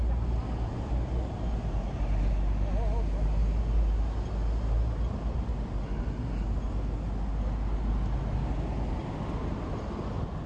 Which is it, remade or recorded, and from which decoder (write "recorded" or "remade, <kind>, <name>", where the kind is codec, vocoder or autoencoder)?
recorded